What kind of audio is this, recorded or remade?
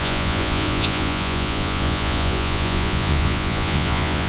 remade